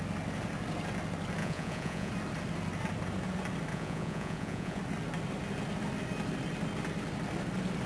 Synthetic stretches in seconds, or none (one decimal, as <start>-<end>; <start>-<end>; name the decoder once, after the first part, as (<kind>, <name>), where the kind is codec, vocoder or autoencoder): 1.4-2.1 (vocoder, Vocos); 3.7-4.8